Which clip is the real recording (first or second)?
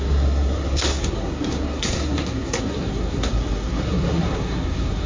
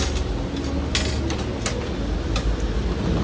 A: second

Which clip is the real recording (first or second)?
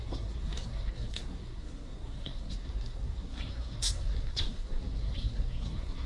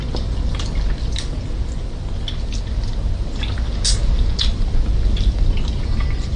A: second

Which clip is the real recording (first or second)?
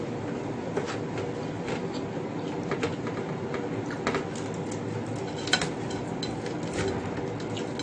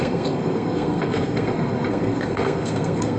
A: first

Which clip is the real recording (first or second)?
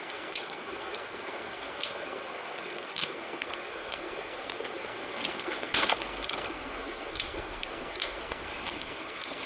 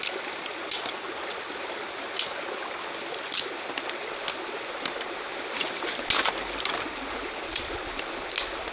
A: second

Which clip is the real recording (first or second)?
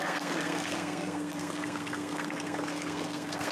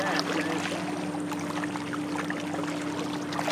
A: second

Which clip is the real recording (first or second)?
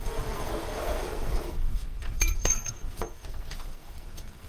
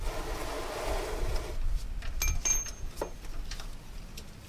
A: second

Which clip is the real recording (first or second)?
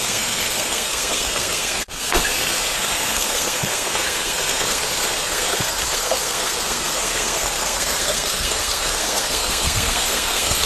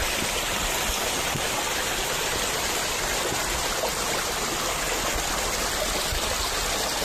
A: second